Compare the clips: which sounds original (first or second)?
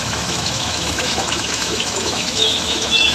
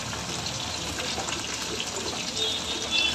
second